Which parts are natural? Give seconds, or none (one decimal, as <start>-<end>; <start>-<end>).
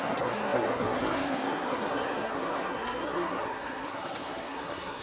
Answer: none